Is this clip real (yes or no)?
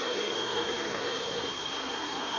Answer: no